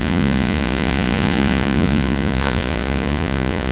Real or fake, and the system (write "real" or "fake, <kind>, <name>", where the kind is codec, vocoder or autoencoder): fake, vocoder, Vocos